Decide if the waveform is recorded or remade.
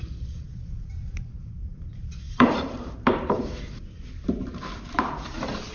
remade